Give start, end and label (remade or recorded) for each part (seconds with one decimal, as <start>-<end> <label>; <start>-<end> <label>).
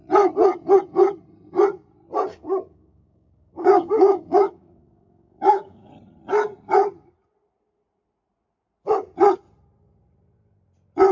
0.0-2.3 recorded; 2.3-5.9 remade; 5.9-11.1 recorded